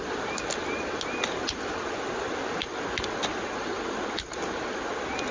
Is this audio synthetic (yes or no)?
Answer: no